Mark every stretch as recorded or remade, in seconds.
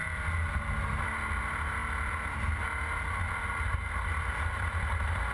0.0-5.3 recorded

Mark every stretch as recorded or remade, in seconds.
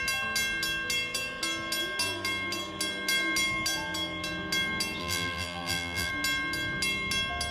0.0-5.0 recorded; 5.0-6.1 remade; 6.1-7.5 recorded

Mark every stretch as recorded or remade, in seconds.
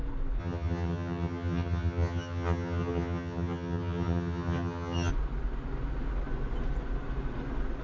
0.0-0.4 recorded; 0.4-5.1 remade; 5.1-7.8 recorded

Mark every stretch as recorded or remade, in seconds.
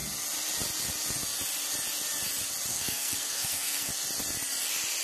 0.0-2.7 recorded; 2.7-3.9 remade; 3.9-5.0 recorded